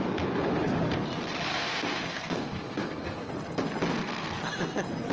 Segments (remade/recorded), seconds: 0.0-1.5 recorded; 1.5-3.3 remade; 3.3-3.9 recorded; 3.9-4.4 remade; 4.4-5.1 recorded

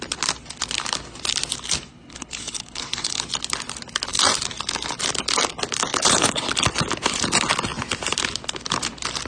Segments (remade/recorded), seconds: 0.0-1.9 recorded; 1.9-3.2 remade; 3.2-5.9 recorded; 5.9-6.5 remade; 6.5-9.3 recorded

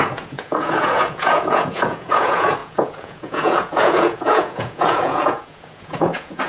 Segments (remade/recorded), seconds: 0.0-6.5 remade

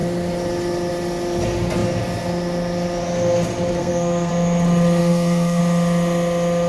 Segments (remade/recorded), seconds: 0.0-3.8 recorded; 3.8-4.3 remade; 4.3-5.0 recorded; 5.0-5.6 remade; 5.6-6.7 recorded